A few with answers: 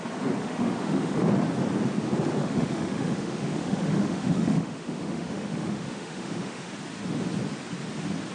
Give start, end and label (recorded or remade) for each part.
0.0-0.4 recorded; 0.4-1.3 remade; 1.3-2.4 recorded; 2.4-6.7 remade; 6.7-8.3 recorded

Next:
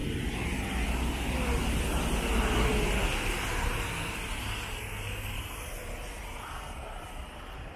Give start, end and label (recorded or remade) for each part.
0.0-7.8 recorded

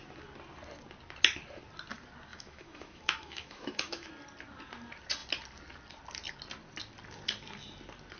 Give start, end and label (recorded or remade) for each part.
0.0-2.3 recorded; 2.3-4.1 remade; 4.1-8.2 recorded